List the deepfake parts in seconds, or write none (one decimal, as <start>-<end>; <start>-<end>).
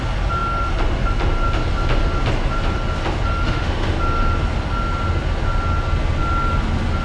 3.4-4.0